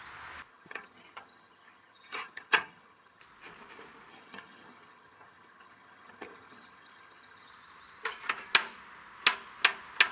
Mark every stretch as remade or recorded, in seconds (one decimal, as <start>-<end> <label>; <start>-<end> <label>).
0.0-0.5 recorded; 0.5-3.2 remade; 3.2-4.1 recorded; 4.1-7.5 remade; 7.5-10.1 recorded